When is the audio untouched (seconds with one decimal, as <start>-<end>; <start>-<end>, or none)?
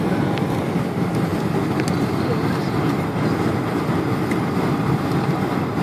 0.0-5.8